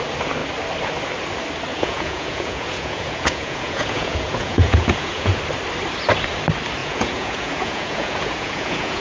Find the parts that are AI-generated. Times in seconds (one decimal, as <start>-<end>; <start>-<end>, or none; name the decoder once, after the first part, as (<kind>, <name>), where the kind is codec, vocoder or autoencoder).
1.7-5.4 (vocoder, Vocos); 6.8-9.0